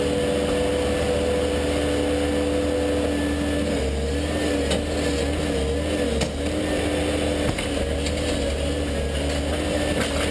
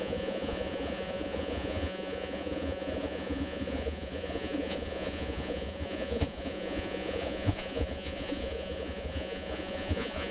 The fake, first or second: second